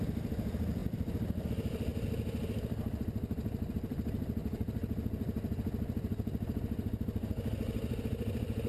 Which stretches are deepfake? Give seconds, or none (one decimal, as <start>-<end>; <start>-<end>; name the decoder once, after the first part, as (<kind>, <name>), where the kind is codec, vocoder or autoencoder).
0.0-1.9 (vocoder, BigVGAN v2); 3.7-4.4; 8.0-8.7